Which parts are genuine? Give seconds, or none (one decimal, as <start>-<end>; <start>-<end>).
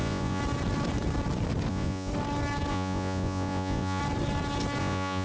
0.4-1.7; 2.1-2.7; 4.0-4.8